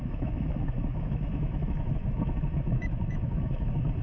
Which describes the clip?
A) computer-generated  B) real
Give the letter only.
A